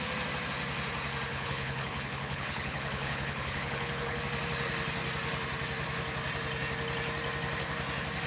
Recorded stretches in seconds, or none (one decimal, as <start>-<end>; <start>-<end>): 0.0-1.3; 4.2-8.3